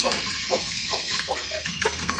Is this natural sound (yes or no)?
no